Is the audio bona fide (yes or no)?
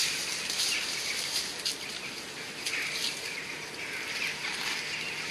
yes